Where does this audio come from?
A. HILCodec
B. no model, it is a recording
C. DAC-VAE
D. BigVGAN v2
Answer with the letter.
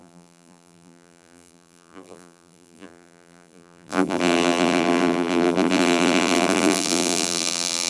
D